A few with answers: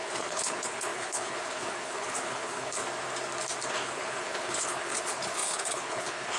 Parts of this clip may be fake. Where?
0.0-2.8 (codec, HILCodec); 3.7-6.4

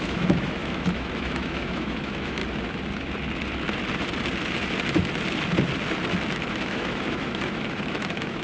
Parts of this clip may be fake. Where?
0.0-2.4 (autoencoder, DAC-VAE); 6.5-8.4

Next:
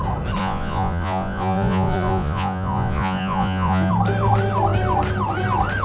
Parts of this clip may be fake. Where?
0.4-3.9 (vocoder, Vocos)

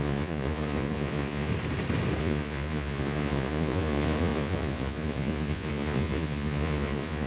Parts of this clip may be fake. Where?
0.0-1.5 (vocoder, Vocos); 2.2-7.3

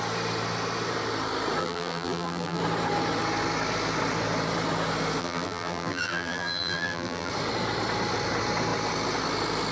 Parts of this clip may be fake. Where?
1.6-2.6 (vocoder, BigVGAN v2); 5.2-7.3

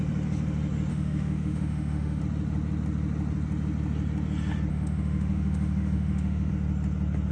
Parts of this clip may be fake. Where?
0.9-2.2 (autoencoder, DAC-VAE); 4.7-6.5

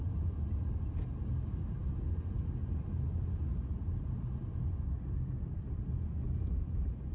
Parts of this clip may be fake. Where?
none

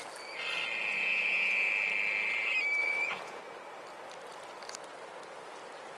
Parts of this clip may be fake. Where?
0.9-1.7 (vocoder, Vocos); 2.8-3.4